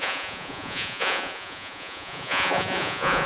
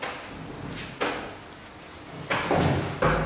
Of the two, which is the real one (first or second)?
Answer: second